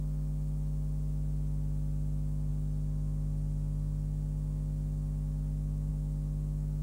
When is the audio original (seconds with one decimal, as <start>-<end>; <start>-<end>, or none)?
0.0-6.8

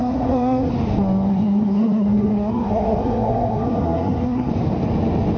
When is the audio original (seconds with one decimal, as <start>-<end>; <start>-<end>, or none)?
0.7-1.3; 4.5-5.4

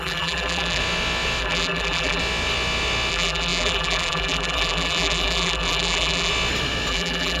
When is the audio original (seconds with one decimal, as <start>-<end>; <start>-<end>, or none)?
0.8-1.4; 2.2-3.1; 6.3-6.9

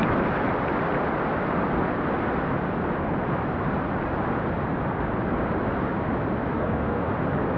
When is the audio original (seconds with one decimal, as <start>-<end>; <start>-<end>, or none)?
0.0-6.5; 7.1-7.6